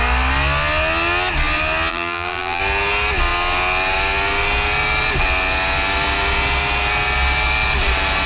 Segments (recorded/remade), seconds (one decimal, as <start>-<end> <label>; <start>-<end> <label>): 0.0-1.9 recorded; 1.9-2.6 remade; 2.6-8.3 recorded